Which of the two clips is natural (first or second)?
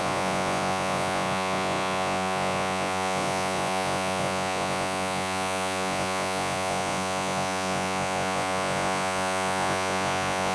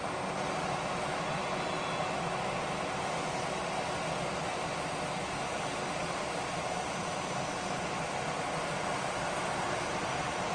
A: second